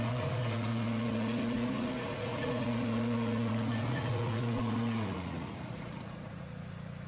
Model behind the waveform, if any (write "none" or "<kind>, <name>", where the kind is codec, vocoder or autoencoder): vocoder, Vocos